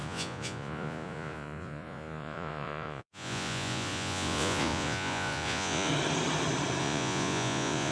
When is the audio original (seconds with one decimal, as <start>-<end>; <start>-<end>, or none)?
5.9-6.8